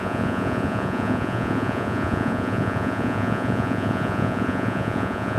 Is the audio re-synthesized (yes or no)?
yes